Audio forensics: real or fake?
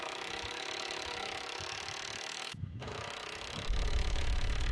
fake